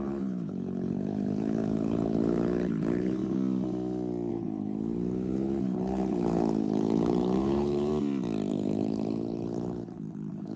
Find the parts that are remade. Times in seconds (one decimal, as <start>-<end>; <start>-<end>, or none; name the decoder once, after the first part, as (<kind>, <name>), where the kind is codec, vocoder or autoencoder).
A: 0.0-3.2 (codec, HILCodec); 4.3-7.9; 8.5-10.6